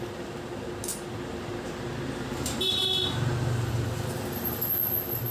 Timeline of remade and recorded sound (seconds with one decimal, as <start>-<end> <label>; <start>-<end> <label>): 0.0-5.3 recorded